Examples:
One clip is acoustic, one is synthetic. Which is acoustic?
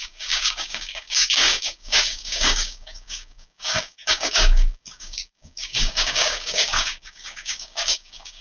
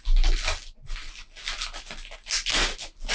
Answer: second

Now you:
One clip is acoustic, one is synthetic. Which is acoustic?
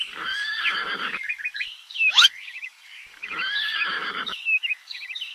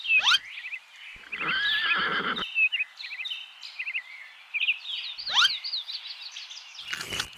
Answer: second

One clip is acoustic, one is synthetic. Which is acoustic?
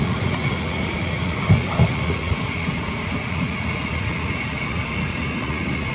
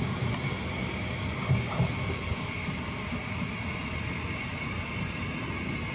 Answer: second